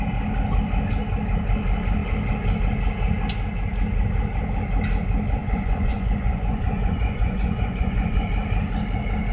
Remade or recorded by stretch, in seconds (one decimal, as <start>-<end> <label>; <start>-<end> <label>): 0.0-5.4 recorded; 5.4-8.3 remade; 8.3-9.3 recorded